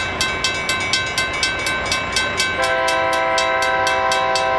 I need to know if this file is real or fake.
real